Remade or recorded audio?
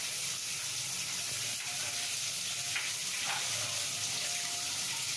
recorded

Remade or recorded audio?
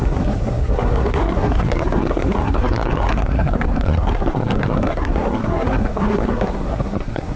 remade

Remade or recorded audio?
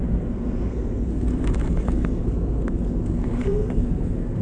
remade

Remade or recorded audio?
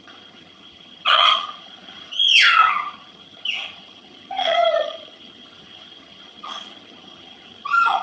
remade